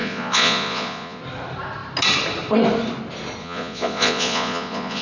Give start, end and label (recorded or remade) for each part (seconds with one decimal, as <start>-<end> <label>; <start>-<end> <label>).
0.0-1.2 remade; 1.2-3.4 recorded; 3.4-5.0 remade